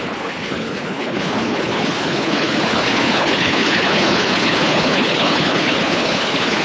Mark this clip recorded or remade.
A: remade